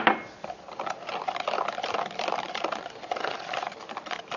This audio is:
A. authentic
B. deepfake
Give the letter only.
A